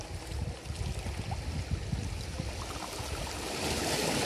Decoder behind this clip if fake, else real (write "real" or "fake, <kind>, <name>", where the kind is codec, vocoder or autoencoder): real